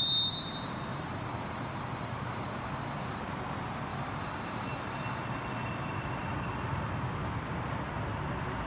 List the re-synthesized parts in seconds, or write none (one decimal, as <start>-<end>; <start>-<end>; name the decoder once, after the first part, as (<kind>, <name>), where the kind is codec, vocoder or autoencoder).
0.9-3.2 (vocoder, BigVGAN v2); 3.9-5.2

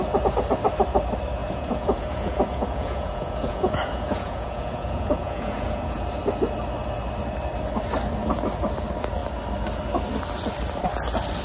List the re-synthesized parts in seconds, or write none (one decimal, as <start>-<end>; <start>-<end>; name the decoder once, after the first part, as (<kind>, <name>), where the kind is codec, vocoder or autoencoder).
1.4-6.0 (vocoder, Vocos)

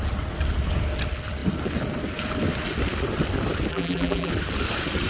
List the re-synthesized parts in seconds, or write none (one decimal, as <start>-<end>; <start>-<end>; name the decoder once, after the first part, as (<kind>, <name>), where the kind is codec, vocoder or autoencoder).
3.7-4.3 (vocoder, BigVGAN v2)

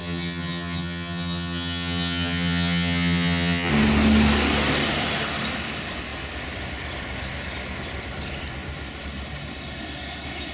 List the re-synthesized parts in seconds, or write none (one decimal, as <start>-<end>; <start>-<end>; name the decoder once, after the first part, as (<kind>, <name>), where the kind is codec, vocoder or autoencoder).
0.0-3.7 (vocoder, HiFi-GAN)

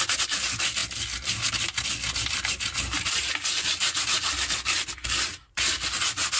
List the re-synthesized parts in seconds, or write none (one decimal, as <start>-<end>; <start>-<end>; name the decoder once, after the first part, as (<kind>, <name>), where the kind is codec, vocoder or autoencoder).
none